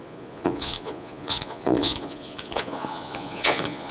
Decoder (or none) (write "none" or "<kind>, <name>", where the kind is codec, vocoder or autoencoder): vocoder, Vocos